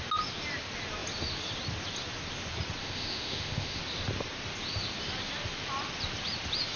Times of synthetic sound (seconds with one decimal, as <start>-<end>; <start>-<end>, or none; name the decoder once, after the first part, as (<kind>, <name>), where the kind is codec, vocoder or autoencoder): 2.8-3.8 (autoencoder, DAC-VAE)